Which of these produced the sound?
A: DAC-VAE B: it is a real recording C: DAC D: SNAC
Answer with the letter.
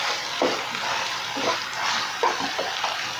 B